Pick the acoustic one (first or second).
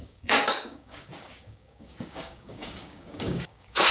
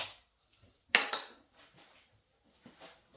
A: second